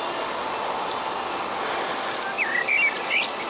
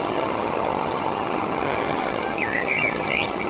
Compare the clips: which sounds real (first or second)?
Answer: first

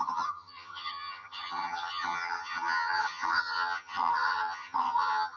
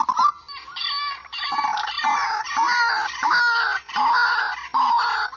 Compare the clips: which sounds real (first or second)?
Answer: second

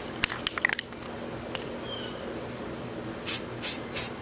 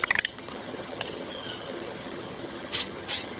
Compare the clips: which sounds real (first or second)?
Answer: first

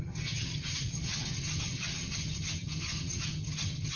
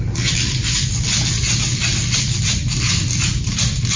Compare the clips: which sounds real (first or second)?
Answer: second